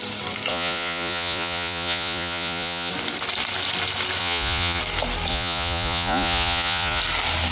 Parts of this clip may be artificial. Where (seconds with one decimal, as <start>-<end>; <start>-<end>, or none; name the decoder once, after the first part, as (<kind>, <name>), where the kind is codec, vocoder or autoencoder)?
0.5-2.9 (vocoder, Vocos); 4.2-4.8; 5.3-7.0